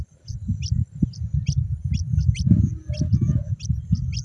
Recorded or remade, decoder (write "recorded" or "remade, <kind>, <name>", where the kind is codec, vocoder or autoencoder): recorded